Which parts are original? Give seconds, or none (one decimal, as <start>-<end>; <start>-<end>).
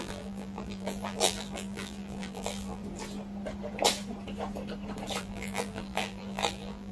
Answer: 2.8-5.2